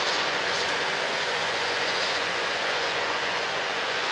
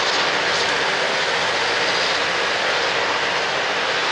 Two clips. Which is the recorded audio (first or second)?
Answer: second